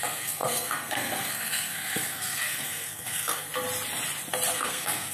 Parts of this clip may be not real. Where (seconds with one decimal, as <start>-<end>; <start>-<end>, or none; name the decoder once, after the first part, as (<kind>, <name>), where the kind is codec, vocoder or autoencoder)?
0.0-3.5 (codec, SNAC); 4.5-5.1